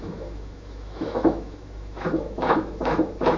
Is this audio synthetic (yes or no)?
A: yes